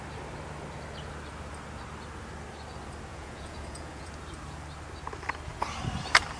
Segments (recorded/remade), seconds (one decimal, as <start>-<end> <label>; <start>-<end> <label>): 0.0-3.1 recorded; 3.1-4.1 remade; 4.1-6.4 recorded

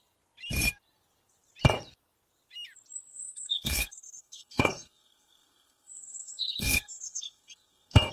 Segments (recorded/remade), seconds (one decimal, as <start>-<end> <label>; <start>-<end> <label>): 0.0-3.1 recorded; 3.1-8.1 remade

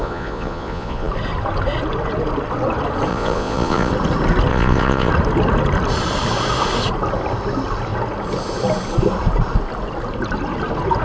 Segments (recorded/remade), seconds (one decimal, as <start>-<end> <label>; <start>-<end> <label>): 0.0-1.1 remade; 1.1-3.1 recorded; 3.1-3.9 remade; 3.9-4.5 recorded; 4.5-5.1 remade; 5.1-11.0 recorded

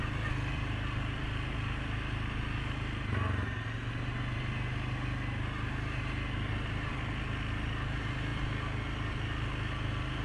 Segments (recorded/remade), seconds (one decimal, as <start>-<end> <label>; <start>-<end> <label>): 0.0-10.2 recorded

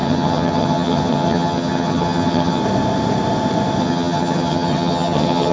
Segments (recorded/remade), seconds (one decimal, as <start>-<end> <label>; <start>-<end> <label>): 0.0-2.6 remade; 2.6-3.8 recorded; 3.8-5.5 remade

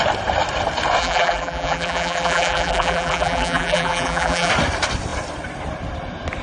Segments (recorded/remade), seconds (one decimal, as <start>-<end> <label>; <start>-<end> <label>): 0.0-1.0 recorded; 1.0-4.5 remade; 4.5-6.4 recorded

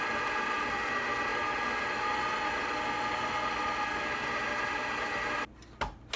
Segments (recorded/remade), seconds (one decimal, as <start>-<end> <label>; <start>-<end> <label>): 0.0-6.2 recorded

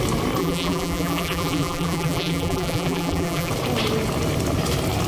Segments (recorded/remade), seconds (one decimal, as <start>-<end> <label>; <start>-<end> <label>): 0.0-0.4 recorded; 0.4-3.5 remade; 3.5-5.1 recorded